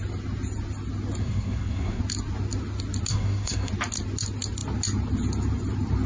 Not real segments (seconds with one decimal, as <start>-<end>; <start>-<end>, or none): 1.2-2.0; 3.1-3.7